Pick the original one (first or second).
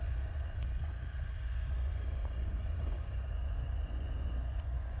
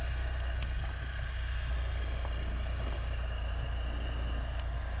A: second